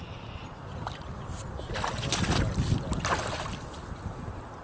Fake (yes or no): no